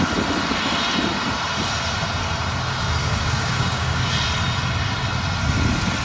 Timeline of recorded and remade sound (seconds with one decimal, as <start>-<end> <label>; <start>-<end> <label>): 0.0-3.0 recorded; 3.0-4.1 remade; 4.1-6.0 recorded